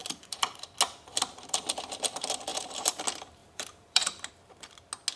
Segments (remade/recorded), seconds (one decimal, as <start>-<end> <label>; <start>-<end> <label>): 0.0-0.7 remade; 0.7-2.5 recorded; 2.5-3.0 remade; 3.0-3.4 recorded; 3.4-4.3 remade; 4.3-5.2 recorded